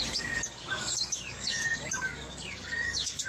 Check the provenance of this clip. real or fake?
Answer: fake